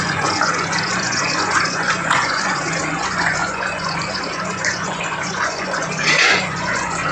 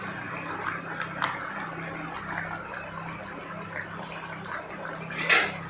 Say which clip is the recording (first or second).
second